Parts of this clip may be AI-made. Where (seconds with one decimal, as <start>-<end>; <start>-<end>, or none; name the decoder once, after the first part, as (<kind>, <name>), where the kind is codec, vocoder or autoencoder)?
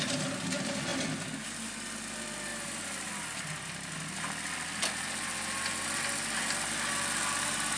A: 0.0-0.9 (vocoder, BigVGAN v2); 1.4-7.8